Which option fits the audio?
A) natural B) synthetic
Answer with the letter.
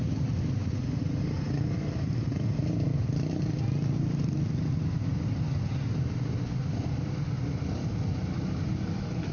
A